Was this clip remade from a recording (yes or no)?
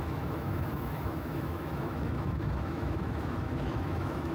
yes